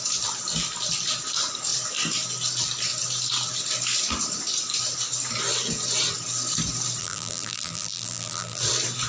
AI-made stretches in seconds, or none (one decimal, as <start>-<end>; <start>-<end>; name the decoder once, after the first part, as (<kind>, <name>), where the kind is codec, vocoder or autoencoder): 7.0-8.6 (vocoder, BigVGAN v2)

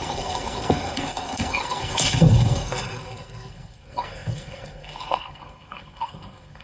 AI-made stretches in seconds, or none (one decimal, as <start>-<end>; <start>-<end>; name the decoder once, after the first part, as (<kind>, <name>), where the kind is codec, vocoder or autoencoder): 0.0-6.6 (codec, SNAC)

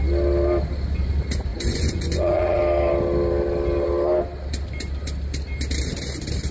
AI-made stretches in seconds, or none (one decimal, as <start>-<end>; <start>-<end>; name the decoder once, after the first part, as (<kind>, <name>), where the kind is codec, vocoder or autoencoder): 1.5-2.6 (vocoder, Vocos)